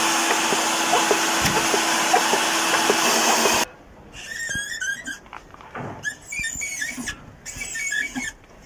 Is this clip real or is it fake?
real